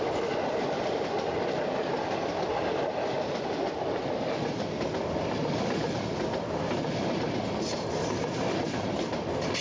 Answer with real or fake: real